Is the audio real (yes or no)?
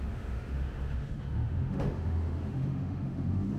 no